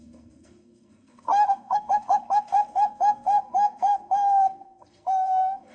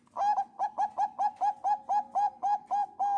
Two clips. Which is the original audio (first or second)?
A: second